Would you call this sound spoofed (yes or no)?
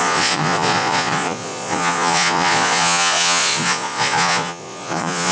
yes